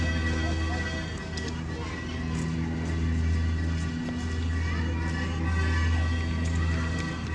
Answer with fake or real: real